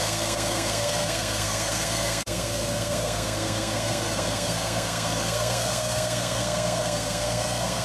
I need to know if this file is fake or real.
fake